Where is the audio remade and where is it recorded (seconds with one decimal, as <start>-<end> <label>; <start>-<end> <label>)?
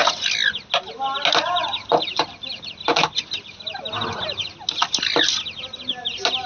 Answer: 0.0-6.5 recorded